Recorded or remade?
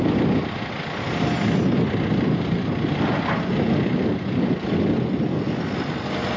recorded